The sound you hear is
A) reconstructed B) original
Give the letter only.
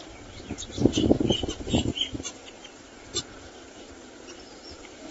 A